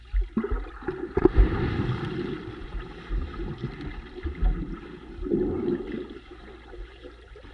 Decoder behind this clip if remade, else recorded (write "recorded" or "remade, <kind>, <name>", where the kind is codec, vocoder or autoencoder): recorded